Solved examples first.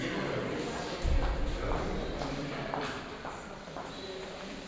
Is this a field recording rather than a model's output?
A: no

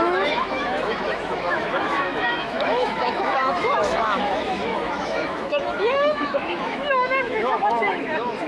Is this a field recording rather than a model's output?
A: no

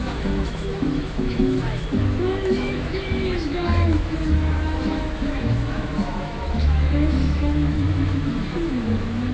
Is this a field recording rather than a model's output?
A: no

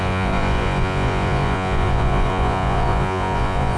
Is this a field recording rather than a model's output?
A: no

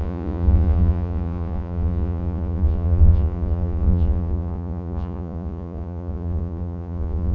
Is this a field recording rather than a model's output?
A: no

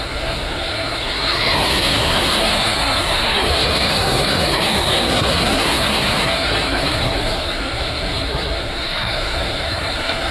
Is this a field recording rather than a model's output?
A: no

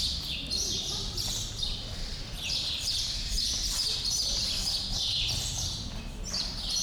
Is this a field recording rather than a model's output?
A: no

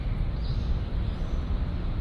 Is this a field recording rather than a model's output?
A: yes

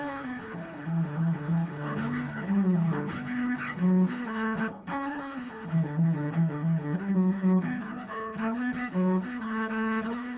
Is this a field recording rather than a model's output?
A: no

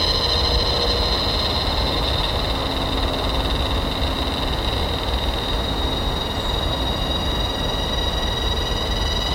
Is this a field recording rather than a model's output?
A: yes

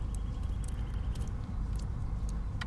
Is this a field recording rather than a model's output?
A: yes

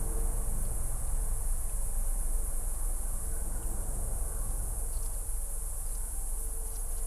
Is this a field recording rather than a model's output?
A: no